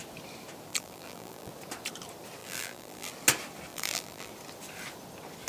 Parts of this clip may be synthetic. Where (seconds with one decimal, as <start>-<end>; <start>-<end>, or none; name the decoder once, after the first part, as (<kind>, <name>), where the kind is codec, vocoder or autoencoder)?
0.7-1.5 (vocoder, BigVGAN v2); 2.4-3.1; 3.7-4.3